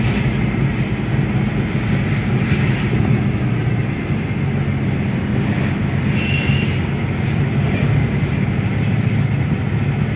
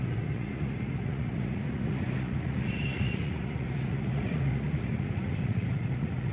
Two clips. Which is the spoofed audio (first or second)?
second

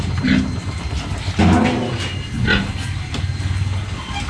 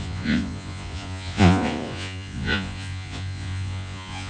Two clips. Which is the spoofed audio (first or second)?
second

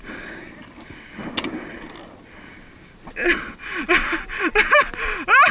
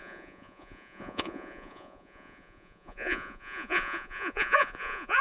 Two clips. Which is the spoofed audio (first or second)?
second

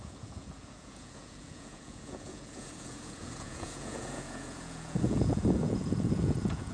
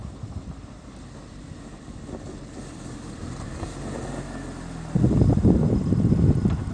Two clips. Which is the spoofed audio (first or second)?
first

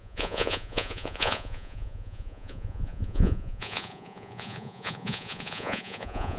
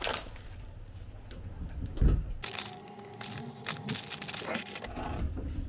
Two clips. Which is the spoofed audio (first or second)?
first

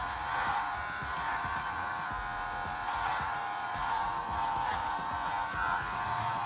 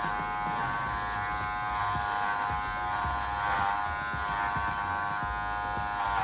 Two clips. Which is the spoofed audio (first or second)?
first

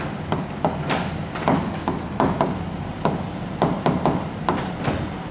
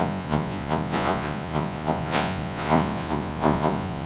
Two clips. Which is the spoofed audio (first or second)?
second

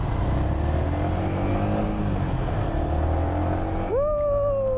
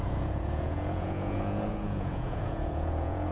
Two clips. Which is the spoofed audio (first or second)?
second